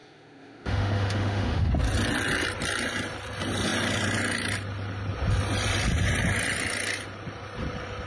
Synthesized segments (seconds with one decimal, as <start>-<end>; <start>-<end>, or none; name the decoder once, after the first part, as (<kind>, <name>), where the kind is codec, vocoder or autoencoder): 0.0-1.7 (autoencoder, DAC-VAE)